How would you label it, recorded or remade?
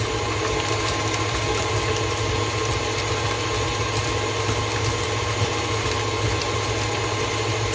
recorded